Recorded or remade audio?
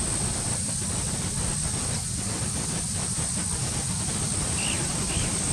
recorded